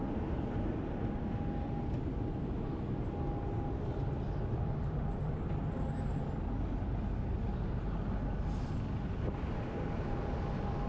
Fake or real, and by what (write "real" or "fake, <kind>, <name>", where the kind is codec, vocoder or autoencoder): real